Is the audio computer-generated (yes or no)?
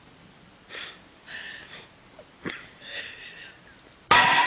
no